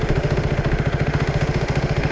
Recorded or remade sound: remade